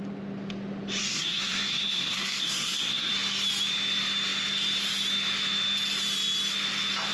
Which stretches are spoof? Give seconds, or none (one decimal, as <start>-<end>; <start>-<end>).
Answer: 1.0-3.1